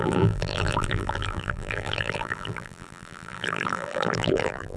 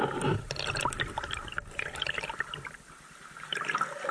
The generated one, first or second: first